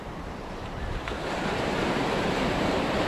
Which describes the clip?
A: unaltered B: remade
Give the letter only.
B